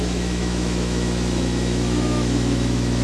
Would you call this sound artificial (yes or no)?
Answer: yes